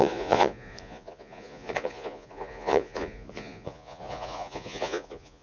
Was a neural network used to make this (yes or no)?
yes